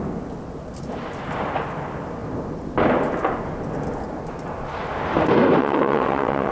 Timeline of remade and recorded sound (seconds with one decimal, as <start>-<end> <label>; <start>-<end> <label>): 0.0-5.6 recorded; 5.6-6.5 remade

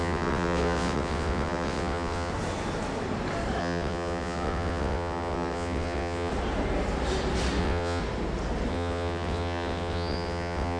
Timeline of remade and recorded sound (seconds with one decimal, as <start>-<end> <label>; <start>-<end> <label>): 0.0-2.3 remade; 2.3-3.6 recorded; 3.6-6.3 remade; 6.3-7.6 recorded; 7.6-8.0 remade; 8.0-8.7 recorded; 8.7-10.8 remade

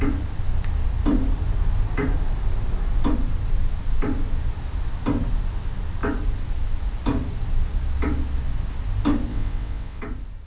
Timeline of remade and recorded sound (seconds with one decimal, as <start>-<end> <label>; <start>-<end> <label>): 0.0-9.3 recorded; 9.3-10.0 remade; 10.0-10.5 recorded

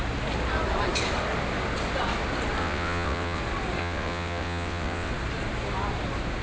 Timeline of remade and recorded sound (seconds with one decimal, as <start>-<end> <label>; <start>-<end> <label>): 0.0-2.6 recorded; 2.6-3.4 remade; 3.4-3.8 recorded; 3.8-5.1 remade; 5.1-6.4 recorded

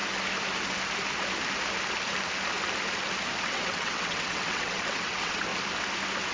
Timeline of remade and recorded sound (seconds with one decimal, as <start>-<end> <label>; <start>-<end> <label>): 0.0-3.4 recorded; 3.4-5.5 remade; 5.5-6.3 recorded